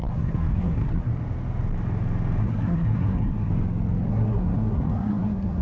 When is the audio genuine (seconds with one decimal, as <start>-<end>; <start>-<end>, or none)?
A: 1.1-2.4; 3.5-4.1